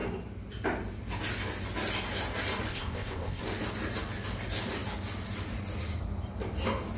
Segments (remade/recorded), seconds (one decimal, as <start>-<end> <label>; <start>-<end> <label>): 0.0-2.7 recorded; 2.7-3.4 remade; 3.4-7.0 recorded